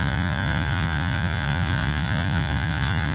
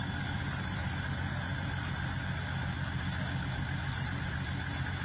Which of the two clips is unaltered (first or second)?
second